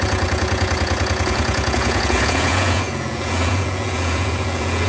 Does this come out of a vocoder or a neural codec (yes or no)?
yes